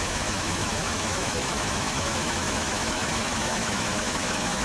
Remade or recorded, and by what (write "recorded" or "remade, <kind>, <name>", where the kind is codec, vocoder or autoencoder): remade, autoencoder, DAC-VAE